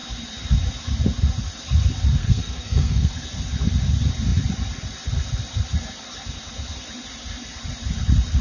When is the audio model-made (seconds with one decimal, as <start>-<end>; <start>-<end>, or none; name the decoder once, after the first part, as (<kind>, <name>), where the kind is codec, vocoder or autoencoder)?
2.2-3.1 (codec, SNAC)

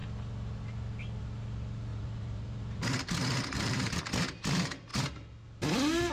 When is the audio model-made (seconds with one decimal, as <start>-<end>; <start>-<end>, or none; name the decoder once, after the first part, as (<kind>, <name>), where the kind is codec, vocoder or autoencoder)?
1.9-4.0 (vocoder, BigVGAN v2)

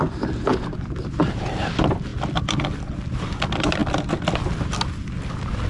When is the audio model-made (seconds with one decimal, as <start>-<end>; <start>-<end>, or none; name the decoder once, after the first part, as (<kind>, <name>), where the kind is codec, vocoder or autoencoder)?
none

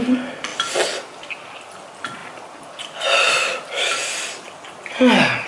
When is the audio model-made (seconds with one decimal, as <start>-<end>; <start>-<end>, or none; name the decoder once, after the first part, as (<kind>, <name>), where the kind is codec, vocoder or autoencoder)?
2.2-3.8 (vocoder, BigVGAN v2)

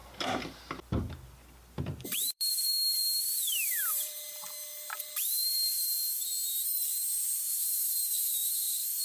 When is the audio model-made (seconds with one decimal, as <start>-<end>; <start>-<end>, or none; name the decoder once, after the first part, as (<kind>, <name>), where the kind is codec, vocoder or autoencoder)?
0.0-6.0 (vocoder, BigVGAN v2); 7.2-9.0

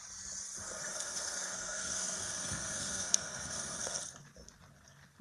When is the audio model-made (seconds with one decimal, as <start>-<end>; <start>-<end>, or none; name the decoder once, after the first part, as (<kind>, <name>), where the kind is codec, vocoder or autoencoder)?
0.9-4.0 (codec, SNAC)